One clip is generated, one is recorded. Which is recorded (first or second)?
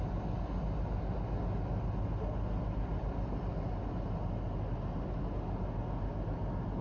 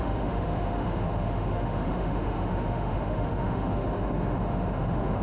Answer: first